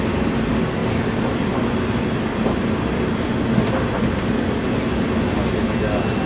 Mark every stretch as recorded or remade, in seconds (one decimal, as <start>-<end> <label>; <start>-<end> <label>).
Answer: 0.0-6.3 recorded